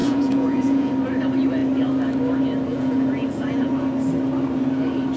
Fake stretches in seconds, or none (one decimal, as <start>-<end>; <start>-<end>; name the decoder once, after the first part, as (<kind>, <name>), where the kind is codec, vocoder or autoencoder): 0.0-0.9 (vocoder, Vocos); 2.7-3.7